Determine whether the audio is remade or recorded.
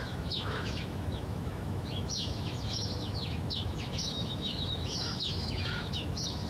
remade